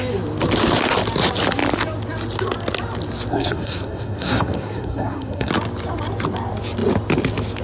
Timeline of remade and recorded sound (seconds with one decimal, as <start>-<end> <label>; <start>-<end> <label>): 0.0-3.3 recorded; 3.3-5.5 remade; 5.5-7.6 recorded